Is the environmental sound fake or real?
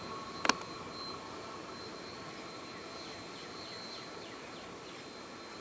real